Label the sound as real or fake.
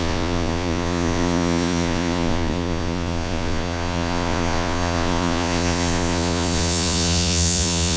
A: fake